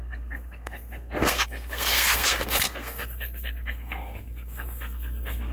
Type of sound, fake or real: fake